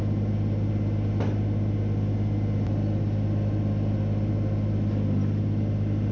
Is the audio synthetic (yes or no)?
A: no